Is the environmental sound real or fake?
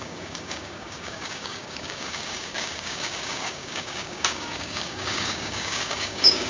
fake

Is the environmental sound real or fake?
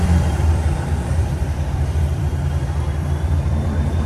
fake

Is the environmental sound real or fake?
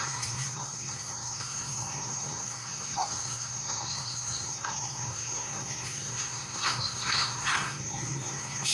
fake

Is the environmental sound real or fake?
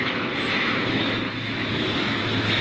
fake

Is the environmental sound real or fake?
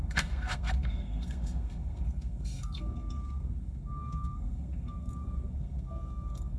fake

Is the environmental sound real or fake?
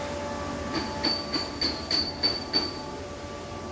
real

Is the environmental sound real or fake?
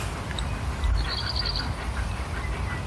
real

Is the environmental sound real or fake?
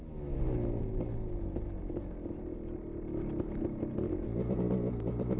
real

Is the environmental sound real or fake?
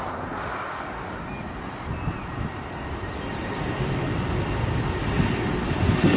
real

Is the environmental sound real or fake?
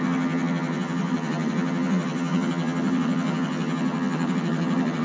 fake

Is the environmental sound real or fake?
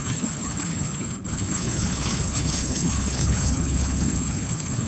fake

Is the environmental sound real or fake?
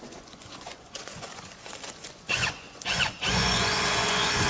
fake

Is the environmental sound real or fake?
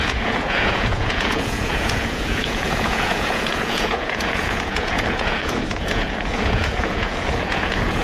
fake